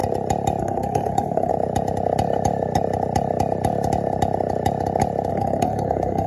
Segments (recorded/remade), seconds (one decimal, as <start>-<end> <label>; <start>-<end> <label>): 0.0-0.6 recorded; 0.6-1.5 remade; 1.5-5.3 recorded; 5.3-6.3 remade